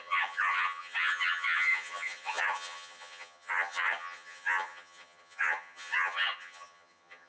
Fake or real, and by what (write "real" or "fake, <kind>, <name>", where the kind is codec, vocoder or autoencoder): fake, vocoder, HiFi-GAN